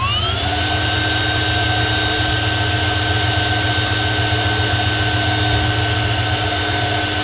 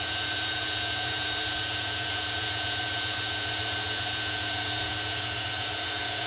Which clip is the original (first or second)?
first